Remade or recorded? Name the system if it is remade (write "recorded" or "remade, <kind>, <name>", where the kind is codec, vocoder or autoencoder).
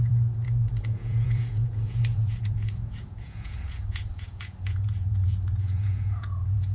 remade, vocoder, Vocos